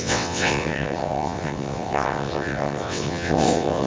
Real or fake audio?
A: fake